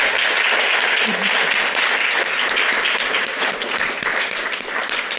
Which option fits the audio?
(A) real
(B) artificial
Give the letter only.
B